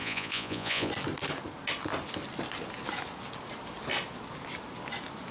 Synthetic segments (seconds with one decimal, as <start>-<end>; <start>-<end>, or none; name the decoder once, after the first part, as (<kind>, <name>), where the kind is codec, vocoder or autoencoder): 0.0-0.9 (vocoder, Vocos)